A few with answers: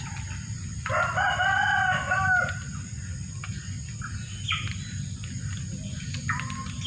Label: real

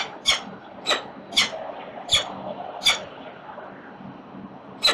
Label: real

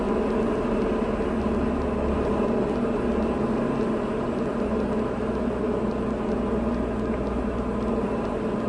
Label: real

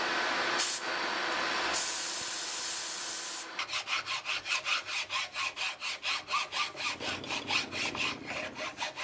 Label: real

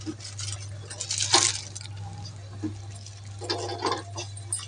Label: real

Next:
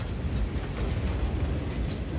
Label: real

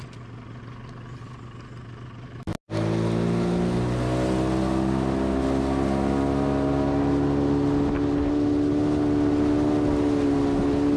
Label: real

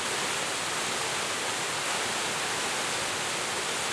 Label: real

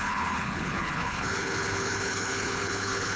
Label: fake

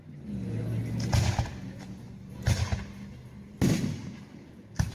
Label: real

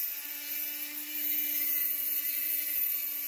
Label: fake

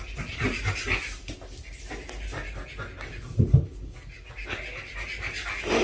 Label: real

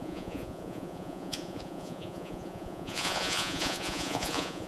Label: fake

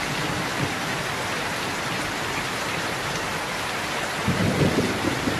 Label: real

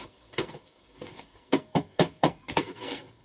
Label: fake